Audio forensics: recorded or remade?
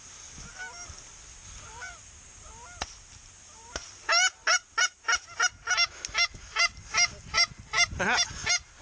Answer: recorded